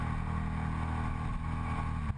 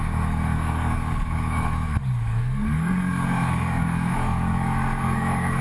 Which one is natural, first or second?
first